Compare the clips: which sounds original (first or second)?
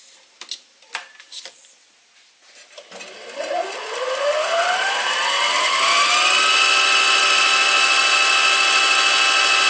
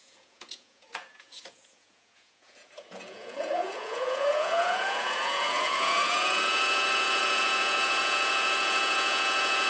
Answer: first